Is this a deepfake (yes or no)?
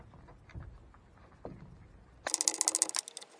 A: no